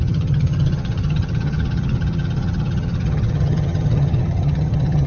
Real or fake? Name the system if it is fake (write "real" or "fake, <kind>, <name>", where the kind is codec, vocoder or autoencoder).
fake, vocoder, HiFi-GAN